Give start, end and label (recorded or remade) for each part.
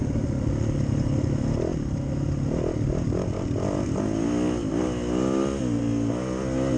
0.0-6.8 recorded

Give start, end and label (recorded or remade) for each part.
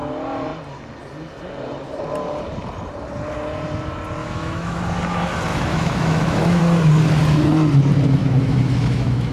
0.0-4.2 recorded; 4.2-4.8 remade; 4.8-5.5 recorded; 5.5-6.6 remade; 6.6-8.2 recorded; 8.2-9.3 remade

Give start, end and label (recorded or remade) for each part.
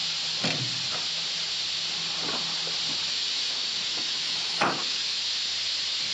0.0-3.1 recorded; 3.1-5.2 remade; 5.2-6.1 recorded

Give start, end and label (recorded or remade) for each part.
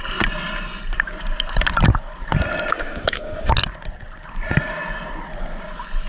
0.0-2.7 recorded; 2.7-3.5 remade; 3.5-6.1 recorded